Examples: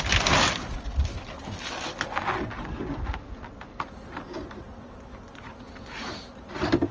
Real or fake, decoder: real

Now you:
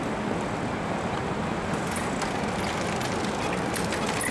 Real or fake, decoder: real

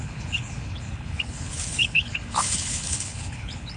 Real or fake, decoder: fake, codec, HILCodec